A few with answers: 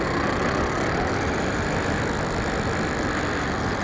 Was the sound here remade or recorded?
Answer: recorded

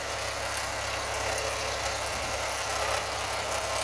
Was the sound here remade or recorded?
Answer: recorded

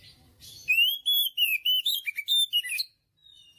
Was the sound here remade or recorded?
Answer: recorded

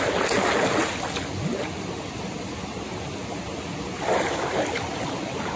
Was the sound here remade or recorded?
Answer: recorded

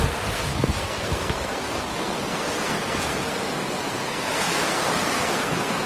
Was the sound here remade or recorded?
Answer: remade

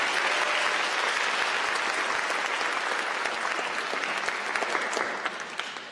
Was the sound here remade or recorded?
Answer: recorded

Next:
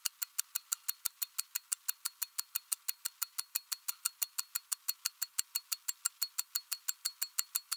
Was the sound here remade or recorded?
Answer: recorded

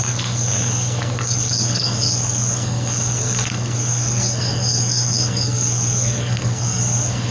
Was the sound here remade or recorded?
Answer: remade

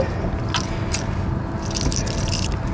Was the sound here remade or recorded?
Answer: recorded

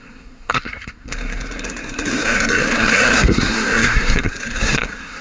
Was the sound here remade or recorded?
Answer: remade